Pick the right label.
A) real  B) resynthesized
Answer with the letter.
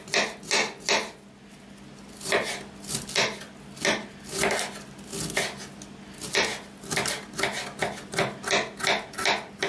A